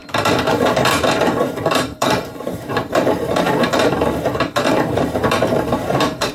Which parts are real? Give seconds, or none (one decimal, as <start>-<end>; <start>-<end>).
none